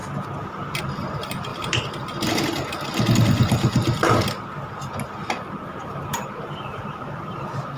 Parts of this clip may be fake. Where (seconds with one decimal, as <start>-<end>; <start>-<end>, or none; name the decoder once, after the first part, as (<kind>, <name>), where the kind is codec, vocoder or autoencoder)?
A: 0.8-1.5 (vocoder, BigVGAN v2); 5.6-7.8